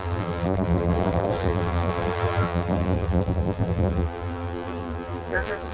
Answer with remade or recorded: remade